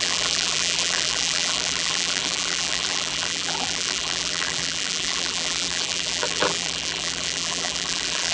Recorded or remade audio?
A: remade